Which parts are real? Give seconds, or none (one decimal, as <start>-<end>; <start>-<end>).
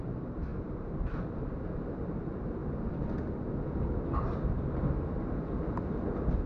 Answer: 2.6-6.5